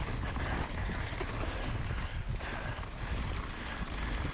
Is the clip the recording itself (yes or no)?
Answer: yes